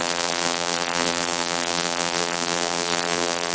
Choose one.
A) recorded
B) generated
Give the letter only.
B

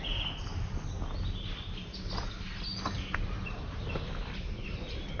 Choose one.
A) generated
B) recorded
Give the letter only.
B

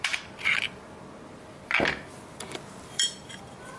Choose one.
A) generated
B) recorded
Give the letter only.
B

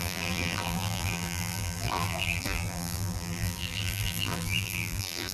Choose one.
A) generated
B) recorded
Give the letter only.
A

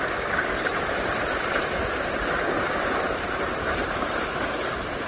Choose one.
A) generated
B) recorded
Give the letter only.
A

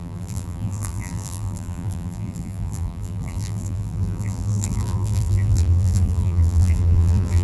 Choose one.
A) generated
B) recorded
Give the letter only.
A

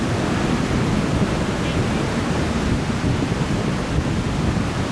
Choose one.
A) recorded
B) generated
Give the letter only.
A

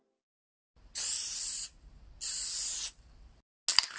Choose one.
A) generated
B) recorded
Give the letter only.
B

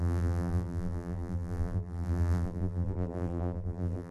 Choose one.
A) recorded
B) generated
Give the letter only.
B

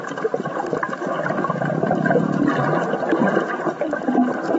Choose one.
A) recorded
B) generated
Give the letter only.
A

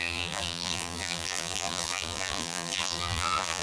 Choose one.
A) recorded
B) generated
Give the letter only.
B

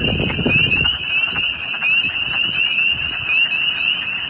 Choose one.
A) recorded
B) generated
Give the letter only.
A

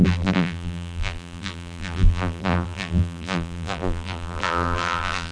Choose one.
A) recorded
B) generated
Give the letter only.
B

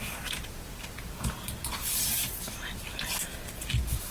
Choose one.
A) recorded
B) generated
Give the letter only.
B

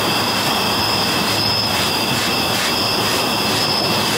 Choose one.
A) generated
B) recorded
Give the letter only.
B